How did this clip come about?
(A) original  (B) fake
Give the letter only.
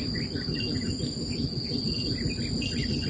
A